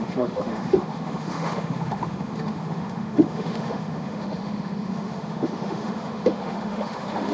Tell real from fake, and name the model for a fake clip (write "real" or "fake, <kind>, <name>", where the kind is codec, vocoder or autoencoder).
fake, autoencoder, DAC-VAE